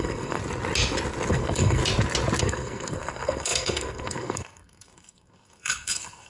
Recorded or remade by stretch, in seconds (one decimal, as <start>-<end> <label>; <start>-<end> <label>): 0.0-0.4 remade; 0.4-1.3 recorded; 1.3-1.8 remade; 1.8-2.4 recorded; 2.4-6.3 remade